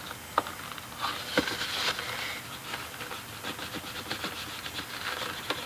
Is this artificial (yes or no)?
no